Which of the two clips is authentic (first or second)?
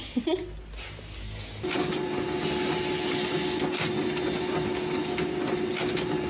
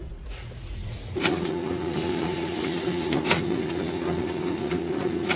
first